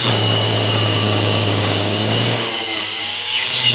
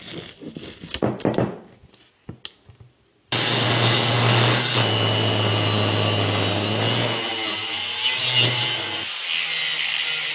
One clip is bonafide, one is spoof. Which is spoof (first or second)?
first